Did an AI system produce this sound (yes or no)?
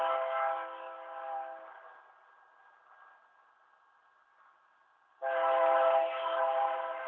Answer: no